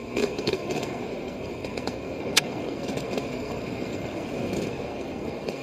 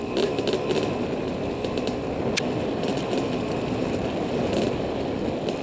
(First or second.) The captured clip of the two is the second